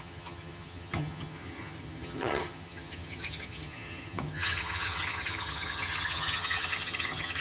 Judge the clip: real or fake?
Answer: fake